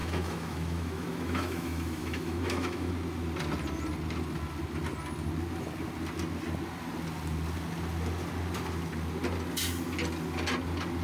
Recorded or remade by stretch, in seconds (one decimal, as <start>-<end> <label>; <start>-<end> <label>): 0.0-2.9 remade; 2.9-11.0 recorded